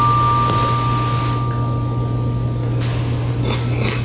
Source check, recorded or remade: recorded